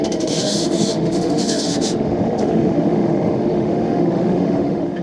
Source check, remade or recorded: remade